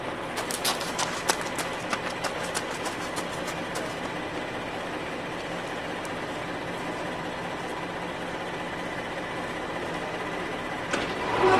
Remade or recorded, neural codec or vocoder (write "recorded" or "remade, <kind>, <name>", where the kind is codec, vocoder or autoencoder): recorded